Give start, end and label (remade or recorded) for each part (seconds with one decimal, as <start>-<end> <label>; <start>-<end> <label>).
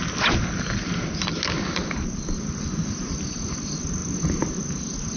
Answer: 0.0-5.2 recorded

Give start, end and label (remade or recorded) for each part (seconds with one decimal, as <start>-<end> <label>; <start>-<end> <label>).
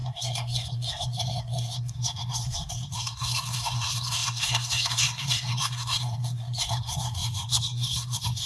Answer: 0.0-8.5 remade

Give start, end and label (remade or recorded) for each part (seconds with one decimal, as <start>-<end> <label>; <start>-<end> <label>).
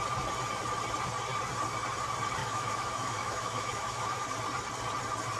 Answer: 0.0-2.4 recorded; 2.4-4.2 remade; 4.2-5.4 recorded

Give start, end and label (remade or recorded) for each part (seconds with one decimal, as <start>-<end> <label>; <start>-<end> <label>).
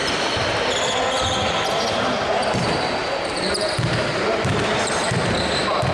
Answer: 0.0-0.8 remade; 0.8-3.0 recorded; 3.0-4.9 remade; 4.9-5.9 recorded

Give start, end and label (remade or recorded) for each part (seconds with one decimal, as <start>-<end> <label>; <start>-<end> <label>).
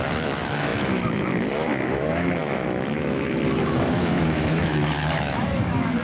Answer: 0.0-6.0 remade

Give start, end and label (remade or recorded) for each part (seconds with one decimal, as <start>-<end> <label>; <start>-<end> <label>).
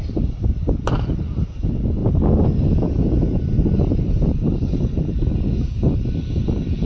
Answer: 0.0-6.9 recorded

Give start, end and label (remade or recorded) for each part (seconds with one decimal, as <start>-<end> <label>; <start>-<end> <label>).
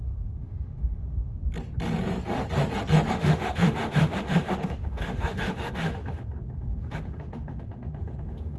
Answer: 0.0-1.4 remade; 1.4-3.1 recorded; 3.1-8.6 remade